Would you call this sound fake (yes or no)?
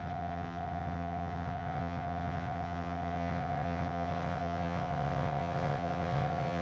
yes